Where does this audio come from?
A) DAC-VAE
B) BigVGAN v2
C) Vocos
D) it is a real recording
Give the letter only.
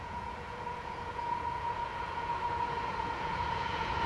C